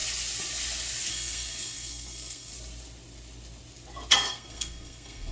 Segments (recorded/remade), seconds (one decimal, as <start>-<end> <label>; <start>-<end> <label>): 0.0-1.1 recorded; 1.1-2.5 remade; 2.5-4.1 recorded; 4.1-5.3 remade